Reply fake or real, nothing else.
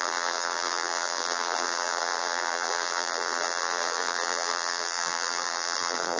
fake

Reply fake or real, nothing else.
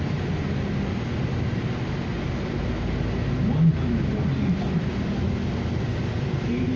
real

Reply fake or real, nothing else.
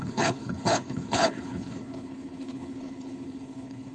fake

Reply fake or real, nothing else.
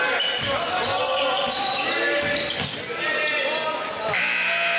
real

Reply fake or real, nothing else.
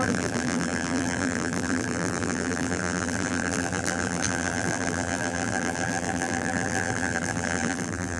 fake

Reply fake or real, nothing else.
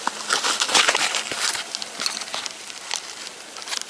fake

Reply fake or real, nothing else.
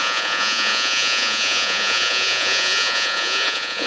fake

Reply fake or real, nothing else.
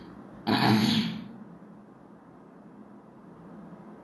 real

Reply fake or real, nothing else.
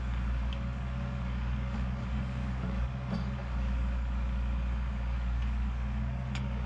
fake